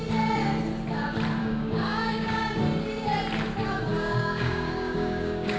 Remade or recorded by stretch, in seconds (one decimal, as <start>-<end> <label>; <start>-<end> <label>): 0.0-1.4 recorded; 1.4-2.6 remade; 2.6-3.9 recorded; 3.9-5.6 remade